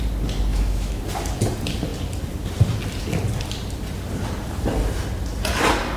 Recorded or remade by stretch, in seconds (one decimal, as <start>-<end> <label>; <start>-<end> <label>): 0.0-0.5 recorded; 0.5-1.0 remade; 1.0-6.0 recorded